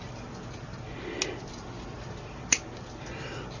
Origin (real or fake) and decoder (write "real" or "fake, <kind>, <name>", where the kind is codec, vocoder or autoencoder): real